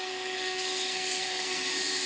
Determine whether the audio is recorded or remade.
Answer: remade